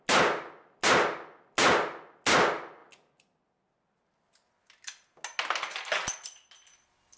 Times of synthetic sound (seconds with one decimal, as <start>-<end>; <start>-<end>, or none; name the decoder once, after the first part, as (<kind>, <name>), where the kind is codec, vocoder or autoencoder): none